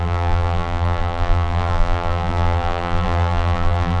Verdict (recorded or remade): remade